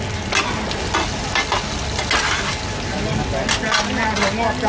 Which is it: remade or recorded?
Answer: recorded